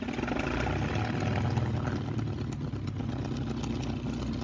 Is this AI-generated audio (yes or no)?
no